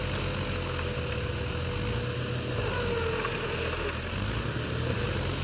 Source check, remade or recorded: recorded